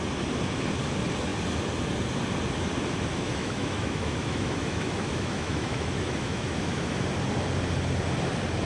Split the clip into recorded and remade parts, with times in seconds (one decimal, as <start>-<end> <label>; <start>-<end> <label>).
0.0-3.1 recorded; 3.1-7.0 remade; 7.0-8.7 recorded

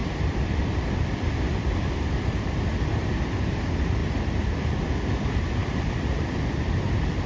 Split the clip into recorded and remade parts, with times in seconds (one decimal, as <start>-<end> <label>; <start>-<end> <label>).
0.0-2.5 remade; 2.5-4.0 recorded; 4.0-4.6 remade; 4.6-5.6 recorded; 5.6-7.3 remade

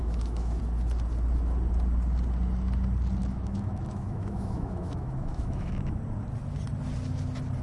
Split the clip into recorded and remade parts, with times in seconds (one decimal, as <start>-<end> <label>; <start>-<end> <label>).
0.0-0.6 remade; 0.6-3.2 recorded; 3.2-6.0 remade; 6.0-7.6 recorded